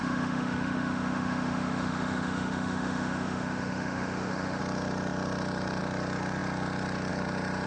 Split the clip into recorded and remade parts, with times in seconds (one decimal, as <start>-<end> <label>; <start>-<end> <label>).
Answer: 0.0-4.6 remade; 4.6-7.7 recorded